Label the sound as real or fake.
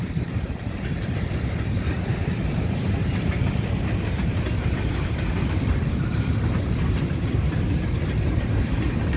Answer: fake